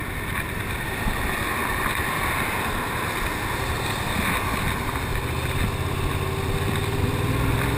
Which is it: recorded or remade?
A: recorded